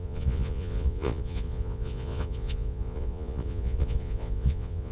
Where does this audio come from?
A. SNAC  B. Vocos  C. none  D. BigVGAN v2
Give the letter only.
B